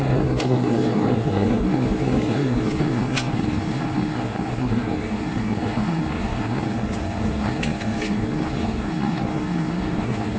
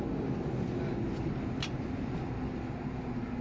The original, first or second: second